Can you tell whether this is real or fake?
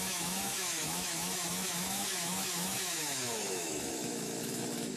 fake